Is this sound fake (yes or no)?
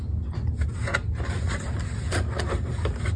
no